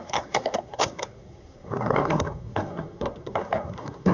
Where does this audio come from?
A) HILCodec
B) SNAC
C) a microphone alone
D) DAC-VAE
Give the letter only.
B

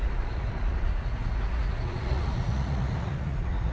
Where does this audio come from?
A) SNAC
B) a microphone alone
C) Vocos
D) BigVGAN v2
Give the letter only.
C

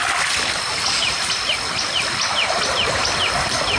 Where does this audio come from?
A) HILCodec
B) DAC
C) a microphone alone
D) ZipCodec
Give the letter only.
C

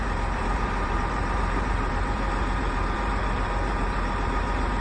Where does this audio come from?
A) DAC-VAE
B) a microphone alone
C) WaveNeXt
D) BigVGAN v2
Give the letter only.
D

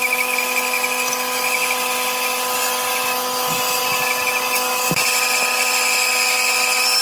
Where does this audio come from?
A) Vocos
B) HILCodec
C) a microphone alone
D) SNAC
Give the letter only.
C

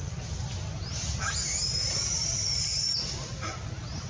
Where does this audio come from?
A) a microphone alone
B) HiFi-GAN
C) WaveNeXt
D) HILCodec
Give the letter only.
A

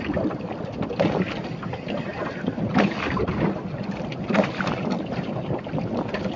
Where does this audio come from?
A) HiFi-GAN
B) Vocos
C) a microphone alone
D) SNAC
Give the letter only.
C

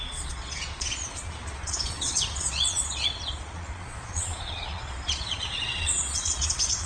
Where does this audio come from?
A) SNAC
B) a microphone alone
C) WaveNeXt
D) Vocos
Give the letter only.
D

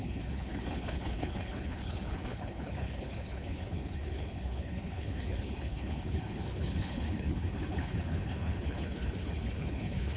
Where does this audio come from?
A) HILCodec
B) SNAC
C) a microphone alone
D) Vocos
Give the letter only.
A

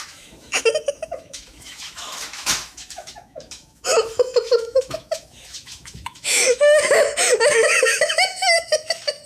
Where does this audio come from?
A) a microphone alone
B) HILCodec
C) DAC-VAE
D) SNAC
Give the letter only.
C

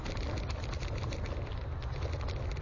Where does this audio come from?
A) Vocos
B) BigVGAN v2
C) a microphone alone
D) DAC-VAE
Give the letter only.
C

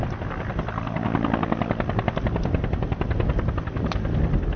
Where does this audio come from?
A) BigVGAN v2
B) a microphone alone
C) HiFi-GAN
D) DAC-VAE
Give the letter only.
B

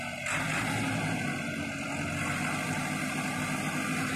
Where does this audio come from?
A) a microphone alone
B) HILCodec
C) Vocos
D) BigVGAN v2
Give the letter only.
A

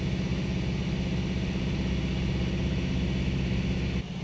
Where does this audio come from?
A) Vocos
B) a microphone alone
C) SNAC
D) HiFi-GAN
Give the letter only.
B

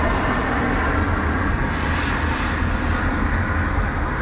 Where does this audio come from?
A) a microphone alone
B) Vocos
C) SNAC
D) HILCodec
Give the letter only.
A